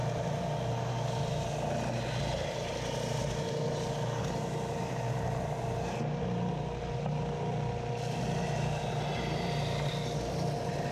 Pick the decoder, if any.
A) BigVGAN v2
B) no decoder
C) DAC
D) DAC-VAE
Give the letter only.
B